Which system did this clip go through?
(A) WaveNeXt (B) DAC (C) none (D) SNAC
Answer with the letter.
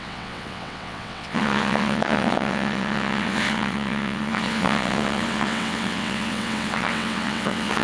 A